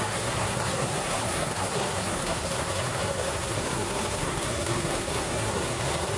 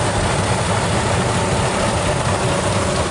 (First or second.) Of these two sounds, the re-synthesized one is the first